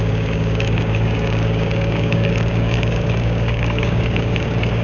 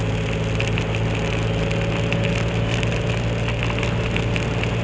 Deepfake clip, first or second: first